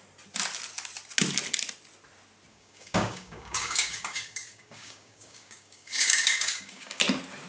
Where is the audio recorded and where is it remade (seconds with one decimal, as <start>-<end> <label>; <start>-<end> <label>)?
0.0-2.5 recorded; 2.5-7.0 remade; 7.0-7.5 recorded